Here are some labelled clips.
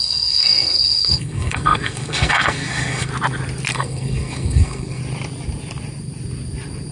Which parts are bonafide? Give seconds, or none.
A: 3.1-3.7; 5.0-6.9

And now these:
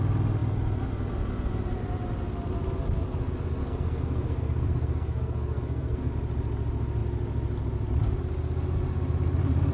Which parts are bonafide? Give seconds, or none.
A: 0.0-3.6; 6.1-9.7

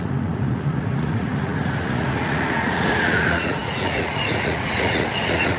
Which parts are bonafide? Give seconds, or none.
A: none

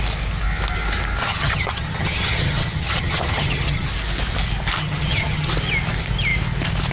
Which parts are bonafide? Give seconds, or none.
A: 0.0-1.2; 3.9-4.8; 5.5-6.9

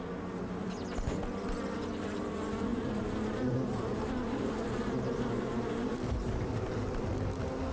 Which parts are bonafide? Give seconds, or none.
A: 0.0-2.7; 6.8-7.7

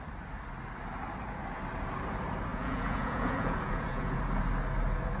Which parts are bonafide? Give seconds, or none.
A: 0.0-2.5; 4.2-5.2